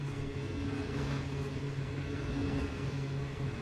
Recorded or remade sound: remade